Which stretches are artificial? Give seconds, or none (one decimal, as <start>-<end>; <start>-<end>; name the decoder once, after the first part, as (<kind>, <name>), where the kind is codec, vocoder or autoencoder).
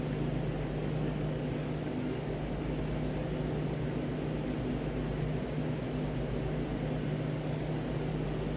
0.8-2.6 (codec, DAC); 7.1-8.1